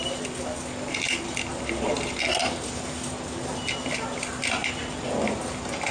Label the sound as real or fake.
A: real